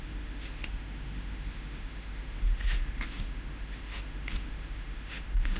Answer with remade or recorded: remade